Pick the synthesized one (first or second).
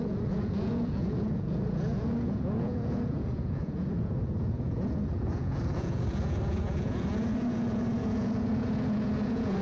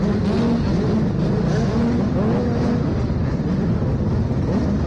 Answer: first